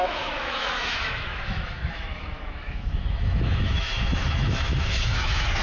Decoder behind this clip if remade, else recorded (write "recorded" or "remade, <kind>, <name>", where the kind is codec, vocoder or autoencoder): remade, autoencoder, DAC-VAE